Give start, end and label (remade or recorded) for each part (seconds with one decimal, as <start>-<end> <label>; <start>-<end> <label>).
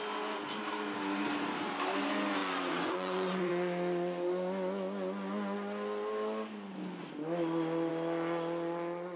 0.0-2.4 recorded; 2.4-3.5 remade; 3.5-9.2 recorded